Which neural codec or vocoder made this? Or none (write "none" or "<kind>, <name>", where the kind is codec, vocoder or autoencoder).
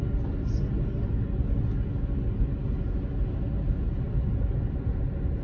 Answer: none